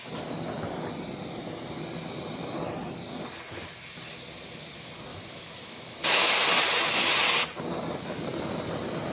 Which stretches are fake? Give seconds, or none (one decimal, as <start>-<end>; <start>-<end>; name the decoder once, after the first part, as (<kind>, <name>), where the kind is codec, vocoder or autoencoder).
5.1-6.3 (autoencoder, DAC-VAE)